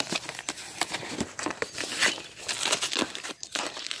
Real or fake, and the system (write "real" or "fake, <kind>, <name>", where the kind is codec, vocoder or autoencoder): real